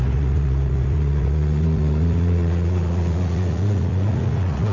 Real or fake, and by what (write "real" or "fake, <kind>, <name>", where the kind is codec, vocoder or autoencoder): fake, vocoder, Vocos